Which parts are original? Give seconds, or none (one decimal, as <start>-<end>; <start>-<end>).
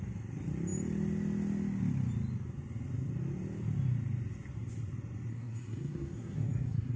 0.0-5.3